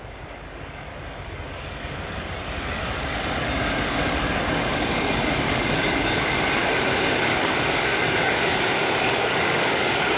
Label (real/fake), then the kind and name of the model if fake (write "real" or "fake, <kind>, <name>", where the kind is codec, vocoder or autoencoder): fake, codec, DAC